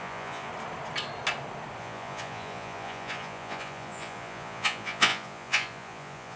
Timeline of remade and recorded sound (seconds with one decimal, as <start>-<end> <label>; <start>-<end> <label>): 0.0-0.5 remade; 0.5-1.8 recorded; 1.8-6.4 remade